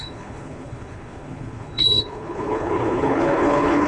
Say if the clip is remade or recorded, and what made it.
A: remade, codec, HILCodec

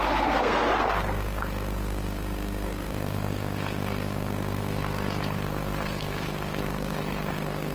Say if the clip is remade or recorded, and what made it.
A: remade, codec, SNAC